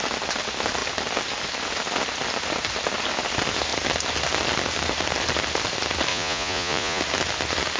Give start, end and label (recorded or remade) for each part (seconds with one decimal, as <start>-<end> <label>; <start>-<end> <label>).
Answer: 0.0-6.1 recorded; 6.1-7.0 remade; 7.0-7.8 recorded